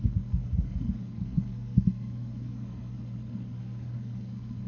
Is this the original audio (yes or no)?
no